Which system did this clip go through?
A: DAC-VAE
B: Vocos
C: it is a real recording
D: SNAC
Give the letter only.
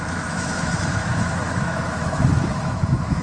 A